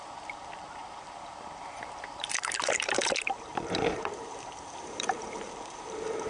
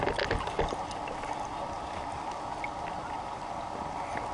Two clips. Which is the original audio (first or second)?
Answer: second